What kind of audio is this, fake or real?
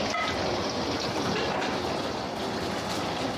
real